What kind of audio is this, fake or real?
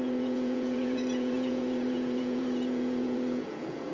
fake